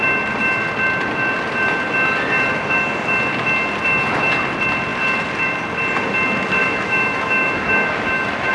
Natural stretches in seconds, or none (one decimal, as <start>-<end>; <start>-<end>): 0.0-6.6